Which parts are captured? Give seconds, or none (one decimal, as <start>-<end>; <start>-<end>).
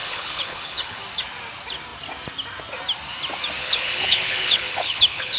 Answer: 1.0-3.6